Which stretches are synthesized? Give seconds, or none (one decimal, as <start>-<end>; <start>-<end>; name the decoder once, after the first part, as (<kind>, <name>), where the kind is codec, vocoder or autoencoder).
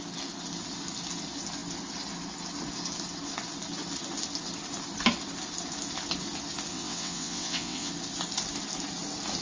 6.7-7.9 (vocoder, WaveNeXt)